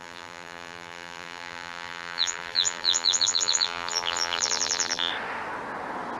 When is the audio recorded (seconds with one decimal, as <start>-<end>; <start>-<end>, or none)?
5.1-6.2